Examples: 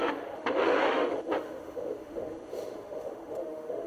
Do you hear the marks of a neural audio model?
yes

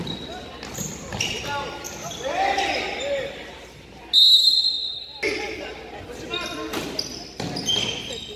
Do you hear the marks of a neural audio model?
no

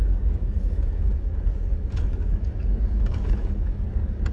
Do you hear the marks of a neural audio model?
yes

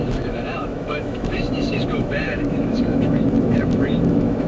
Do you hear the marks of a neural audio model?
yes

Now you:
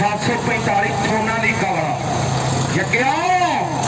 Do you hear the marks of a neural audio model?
yes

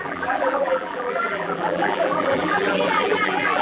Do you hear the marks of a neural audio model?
yes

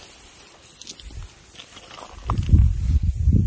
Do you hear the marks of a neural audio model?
no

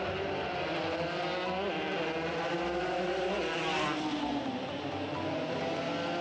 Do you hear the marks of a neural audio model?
no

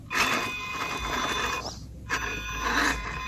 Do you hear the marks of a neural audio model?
no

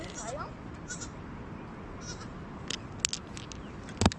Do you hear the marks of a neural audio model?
no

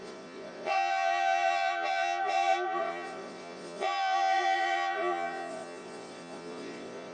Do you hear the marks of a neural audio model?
yes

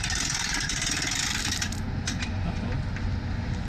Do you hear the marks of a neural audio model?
no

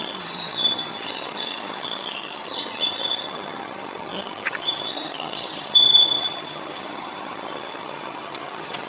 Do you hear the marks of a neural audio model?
yes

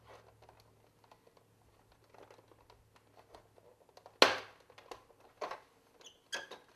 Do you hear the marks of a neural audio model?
no